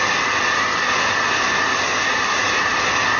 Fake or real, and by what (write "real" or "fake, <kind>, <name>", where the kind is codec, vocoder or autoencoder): real